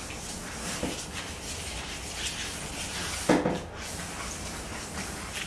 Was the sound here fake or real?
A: real